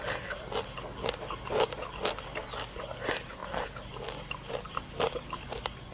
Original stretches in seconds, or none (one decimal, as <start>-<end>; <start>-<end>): 0.0-5.9